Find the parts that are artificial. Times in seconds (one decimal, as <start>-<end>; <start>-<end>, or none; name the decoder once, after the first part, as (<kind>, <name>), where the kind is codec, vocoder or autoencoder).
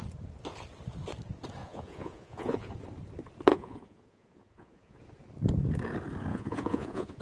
1.6-2.7 (vocoder, Vocos); 3.5-5.0; 6.3-7.2